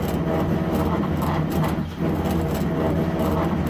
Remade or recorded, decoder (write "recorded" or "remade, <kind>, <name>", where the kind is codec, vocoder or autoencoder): recorded